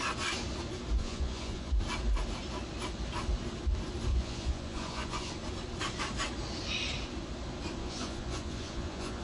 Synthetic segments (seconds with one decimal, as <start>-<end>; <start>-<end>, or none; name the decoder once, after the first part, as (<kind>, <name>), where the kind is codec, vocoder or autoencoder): 1.0-1.7 (vocoder, Vocos); 4.1-5.3; 7.8-9.2